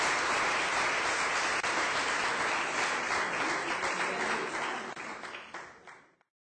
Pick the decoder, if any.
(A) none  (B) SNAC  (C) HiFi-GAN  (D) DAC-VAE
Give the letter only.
A